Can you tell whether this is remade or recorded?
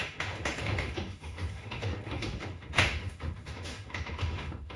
remade